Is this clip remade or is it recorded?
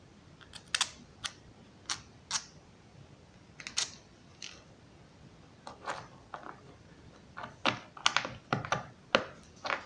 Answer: recorded